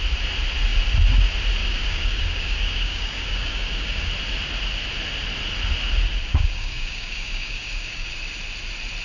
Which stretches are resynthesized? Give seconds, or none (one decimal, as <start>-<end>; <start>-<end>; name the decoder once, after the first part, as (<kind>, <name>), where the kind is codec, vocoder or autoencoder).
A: 1.6-4.1 (codec, DAC); 6.3-8.1